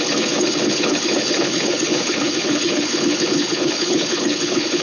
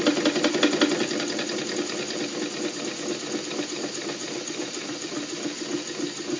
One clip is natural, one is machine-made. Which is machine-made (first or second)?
first